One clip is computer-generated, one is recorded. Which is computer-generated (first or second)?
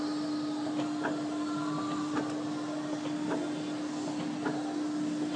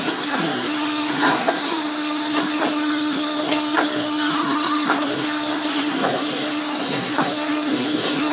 second